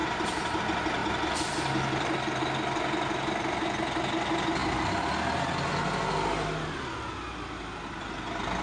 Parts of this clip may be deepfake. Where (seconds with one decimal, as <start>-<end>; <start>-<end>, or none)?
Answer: 0.0-0.6